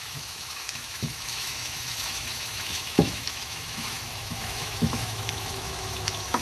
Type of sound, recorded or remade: remade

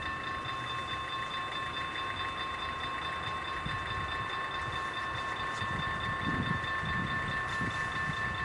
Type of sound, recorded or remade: recorded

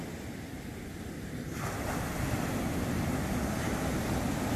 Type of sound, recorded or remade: recorded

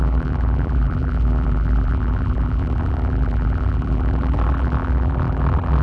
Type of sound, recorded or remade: remade